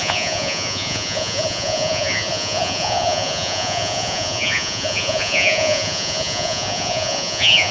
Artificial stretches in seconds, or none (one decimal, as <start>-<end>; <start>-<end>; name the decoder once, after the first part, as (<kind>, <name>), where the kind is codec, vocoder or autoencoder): 0.0-7.7 (vocoder, Vocos)